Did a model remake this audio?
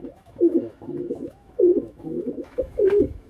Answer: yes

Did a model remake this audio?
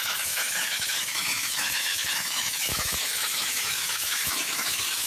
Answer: yes